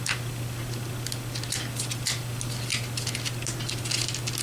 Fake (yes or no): no